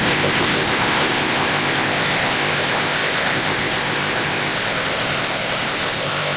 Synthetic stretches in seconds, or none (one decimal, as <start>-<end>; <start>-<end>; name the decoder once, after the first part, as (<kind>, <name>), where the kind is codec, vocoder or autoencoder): 0.0-6.4 (codec, ZipCodec)